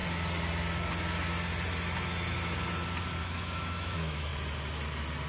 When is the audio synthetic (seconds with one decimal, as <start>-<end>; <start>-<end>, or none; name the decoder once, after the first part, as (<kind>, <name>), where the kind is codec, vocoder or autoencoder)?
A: 3.2-4.3 (autoencoder, DAC-VAE)